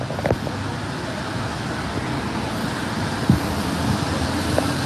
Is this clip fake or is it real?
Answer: real